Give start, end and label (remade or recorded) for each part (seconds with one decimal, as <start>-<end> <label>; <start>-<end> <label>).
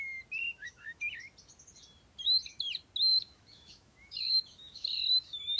0.0-0.4 recorded; 0.4-1.0 remade; 1.0-3.1 recorded; 3.1-5.6 remade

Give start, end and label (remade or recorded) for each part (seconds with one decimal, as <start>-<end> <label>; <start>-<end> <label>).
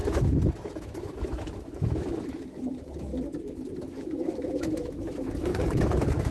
0.0-3.1 remade; 3.1-3.9 recorded; 3.9-6.3 remade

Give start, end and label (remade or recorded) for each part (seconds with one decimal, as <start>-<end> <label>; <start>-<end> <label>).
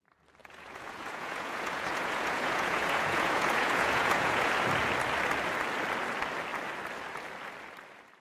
0.0-0.4 recorded; 0.4-4.5 remade; 4.5-8.2 recorded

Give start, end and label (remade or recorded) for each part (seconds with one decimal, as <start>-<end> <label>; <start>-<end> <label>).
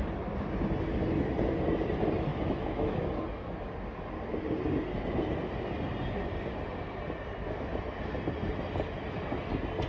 0.0-2.3 recorded; 2.3-3.0 remade; 3.0-9.9 recorded